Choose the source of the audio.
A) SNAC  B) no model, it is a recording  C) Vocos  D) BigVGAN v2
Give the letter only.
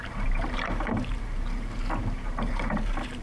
D